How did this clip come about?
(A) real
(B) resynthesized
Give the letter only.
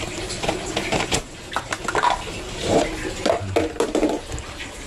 A